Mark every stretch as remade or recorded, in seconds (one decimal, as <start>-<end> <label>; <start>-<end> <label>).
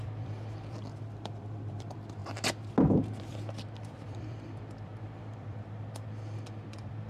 0.0-2.2 remade; 2.2-3.2 recorded; 3.2-7.1 remade